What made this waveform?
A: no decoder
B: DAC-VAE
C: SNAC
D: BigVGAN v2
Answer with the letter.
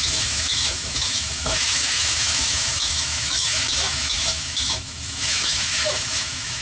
B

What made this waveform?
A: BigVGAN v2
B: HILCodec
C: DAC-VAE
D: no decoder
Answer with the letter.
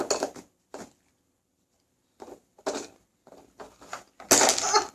D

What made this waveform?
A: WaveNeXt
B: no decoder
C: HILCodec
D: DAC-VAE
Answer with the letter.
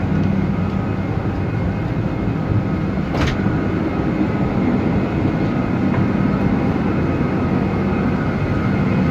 B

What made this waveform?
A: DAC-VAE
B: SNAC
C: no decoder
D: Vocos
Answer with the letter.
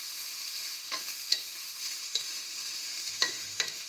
A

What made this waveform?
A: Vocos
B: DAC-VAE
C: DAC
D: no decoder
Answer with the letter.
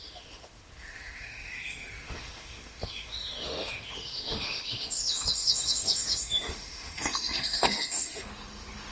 B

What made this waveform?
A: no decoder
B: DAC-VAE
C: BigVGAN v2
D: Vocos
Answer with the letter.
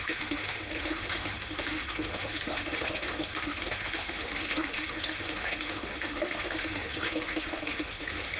B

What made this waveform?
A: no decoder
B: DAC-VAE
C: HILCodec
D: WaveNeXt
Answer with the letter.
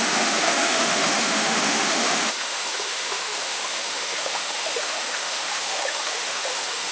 B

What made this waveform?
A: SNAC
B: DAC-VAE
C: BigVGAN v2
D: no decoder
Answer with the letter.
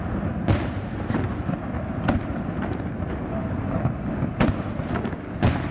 D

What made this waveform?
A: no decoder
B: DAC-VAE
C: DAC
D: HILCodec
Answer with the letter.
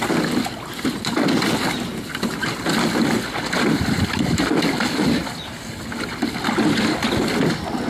A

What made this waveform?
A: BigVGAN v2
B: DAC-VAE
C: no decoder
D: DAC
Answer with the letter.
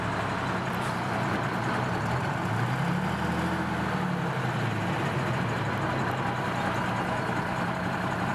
C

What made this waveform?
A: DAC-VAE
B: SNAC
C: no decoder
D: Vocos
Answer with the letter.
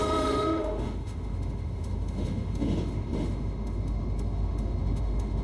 A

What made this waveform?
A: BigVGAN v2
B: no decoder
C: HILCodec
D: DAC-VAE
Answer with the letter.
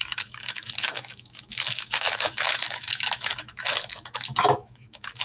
D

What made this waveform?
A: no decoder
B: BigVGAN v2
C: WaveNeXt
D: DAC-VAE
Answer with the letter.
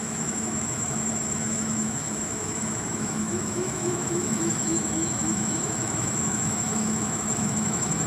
D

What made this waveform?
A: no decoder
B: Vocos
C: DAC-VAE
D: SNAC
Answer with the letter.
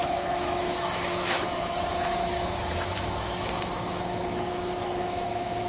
C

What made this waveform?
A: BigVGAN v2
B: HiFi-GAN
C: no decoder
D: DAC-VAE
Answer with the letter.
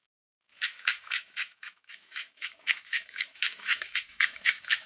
D